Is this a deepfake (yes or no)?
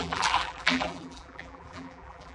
yes